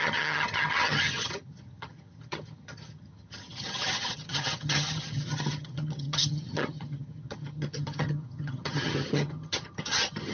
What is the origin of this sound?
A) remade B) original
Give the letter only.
A